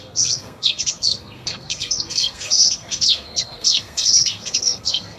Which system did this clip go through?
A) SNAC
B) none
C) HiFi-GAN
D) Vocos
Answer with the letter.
A